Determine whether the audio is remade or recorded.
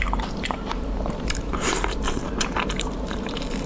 remade